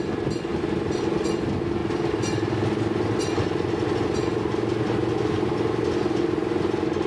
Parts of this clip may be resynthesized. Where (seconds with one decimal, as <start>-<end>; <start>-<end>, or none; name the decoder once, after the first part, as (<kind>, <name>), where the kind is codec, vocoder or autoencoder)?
0.5-1.0 (vocoder, BigVGAN v2)